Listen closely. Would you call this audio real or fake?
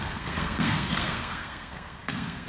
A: fake